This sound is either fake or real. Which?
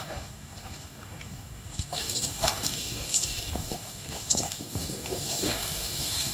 fake